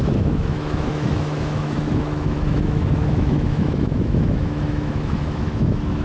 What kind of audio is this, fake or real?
fake